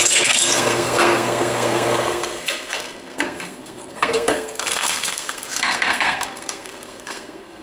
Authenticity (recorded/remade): remade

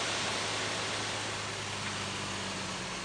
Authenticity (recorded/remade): recorded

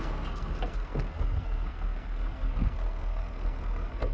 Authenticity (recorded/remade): remade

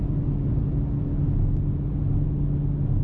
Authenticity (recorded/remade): recorded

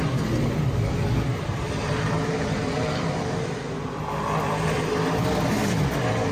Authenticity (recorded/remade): recorded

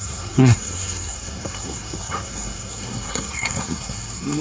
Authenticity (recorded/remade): remade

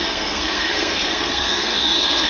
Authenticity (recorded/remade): remade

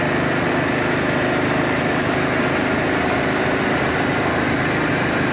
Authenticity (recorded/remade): recorded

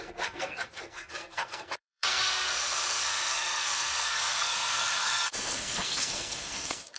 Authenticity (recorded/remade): remade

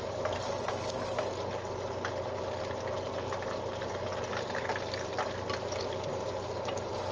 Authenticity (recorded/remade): recorded